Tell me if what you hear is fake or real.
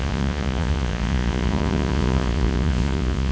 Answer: fake